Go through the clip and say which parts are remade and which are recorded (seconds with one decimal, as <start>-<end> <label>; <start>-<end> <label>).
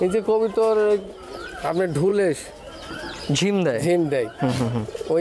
0.0-5.2 recorded